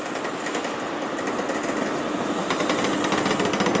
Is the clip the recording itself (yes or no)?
yes